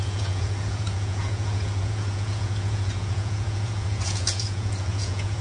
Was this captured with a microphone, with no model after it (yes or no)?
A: no